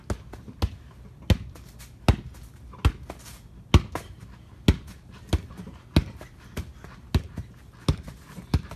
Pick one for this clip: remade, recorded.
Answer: recorded